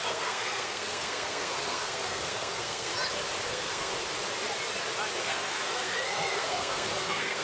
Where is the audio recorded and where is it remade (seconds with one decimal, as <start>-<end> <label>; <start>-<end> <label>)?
0.0-2.9 remade; 2.9-3.5 recorded; 3.5-3.9 remade; 3.9-5.2 recorded; 5.2-7.4 remade